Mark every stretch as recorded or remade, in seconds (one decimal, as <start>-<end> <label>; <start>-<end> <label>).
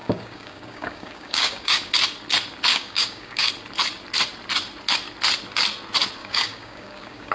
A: 0.0-1.9 remade; 1.9-2.7 recorded; 2.7-3.5 remade; 3.5-6.2 recorded; 6.2-7.3 remade